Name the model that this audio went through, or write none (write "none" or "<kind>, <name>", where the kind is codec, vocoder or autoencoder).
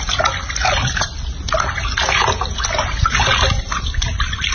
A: none